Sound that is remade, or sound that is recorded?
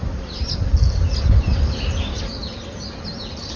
recorded